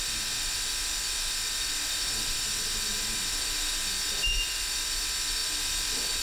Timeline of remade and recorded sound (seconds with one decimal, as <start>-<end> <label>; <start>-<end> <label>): 0.0-6.2 recorded